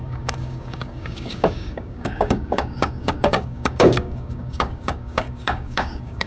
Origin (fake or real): fake